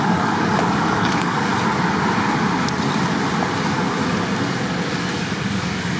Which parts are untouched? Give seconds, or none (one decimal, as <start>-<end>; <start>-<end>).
1.5-5.1